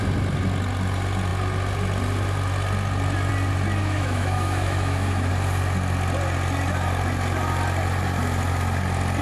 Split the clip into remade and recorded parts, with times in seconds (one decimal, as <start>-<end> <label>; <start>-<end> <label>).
0.0-3.8 recorded; 3.8-5.3 remade; 5.3-9.2 recorded